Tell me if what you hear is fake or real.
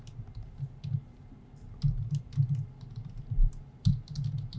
real